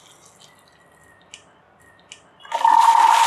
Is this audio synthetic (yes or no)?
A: no